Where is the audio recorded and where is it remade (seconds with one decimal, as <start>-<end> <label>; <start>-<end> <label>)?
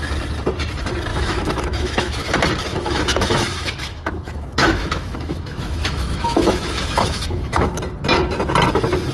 0.0-1.1 recorded; 1.1-2.3 remade; 2.3-2.7 recorded; 2.7-7.8 remade; 7.8-9.1 recorded